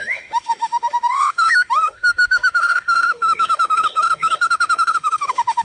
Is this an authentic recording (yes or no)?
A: no